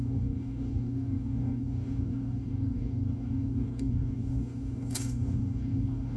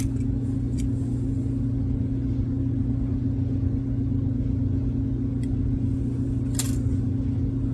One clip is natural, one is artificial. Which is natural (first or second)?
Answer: second